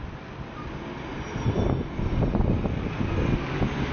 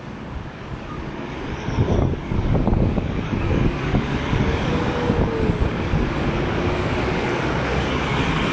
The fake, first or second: second